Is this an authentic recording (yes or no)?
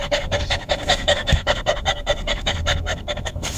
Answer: no